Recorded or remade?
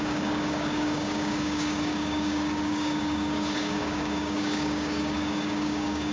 remade